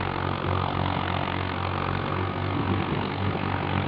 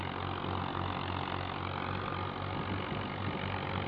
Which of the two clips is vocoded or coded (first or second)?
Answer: first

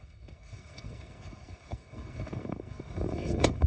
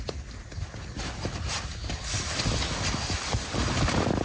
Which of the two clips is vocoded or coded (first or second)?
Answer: first